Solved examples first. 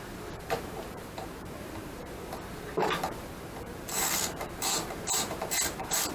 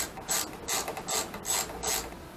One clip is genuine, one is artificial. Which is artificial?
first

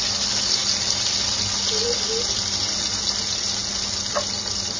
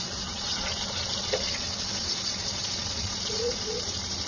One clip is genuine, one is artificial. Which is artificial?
second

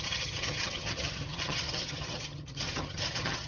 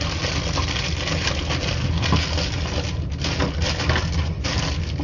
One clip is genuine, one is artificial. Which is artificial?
first